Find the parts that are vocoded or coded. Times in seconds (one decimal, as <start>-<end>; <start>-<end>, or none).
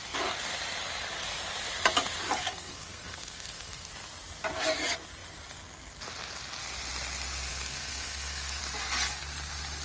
2.4-3.9; 7.5-8.6